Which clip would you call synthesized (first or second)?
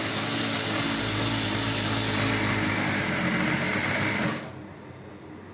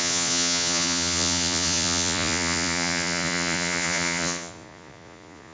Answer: second